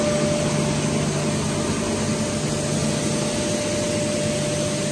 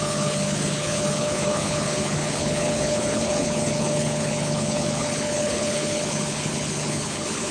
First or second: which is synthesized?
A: second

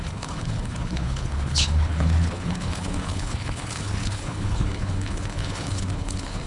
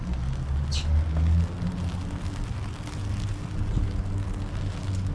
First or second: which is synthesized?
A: first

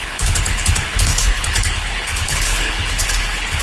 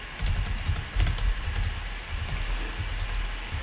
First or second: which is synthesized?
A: first